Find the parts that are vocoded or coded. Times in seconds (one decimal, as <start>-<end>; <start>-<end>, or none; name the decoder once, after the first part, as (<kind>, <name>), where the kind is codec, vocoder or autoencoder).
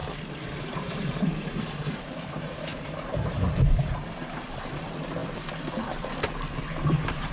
0.6-5.2 (vocoder, BigVGAN v2); 6.6-7.3